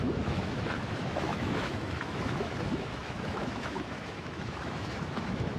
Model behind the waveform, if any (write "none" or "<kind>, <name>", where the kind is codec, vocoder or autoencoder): autoencoder, DAC-VAE